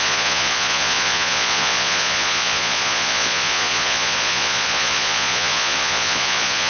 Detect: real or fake fake